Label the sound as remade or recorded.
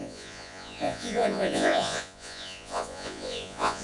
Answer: remade